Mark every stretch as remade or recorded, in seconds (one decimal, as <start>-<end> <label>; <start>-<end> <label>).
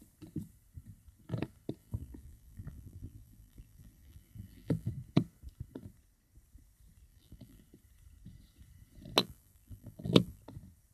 0.0-1.8 recorded; 1.8-4.9 remade; 4.9-7.1 recorded; 7.1-7.6 remade; 7.6-9.2 recorded; 9.2-10.4 remade; 10.4-10.9 recorded